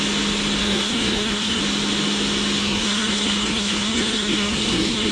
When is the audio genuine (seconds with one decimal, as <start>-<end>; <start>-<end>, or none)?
0.0-0.6; 1.6-2.6